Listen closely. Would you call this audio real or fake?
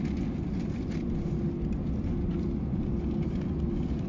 real